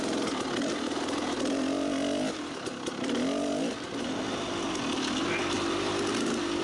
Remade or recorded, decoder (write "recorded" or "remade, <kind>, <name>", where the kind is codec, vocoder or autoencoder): recorded